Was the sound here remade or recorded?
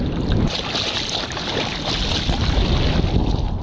recorded